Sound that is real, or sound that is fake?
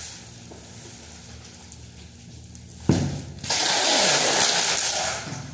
real